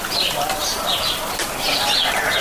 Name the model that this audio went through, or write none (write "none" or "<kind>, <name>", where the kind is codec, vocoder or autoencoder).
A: none